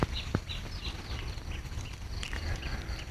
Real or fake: real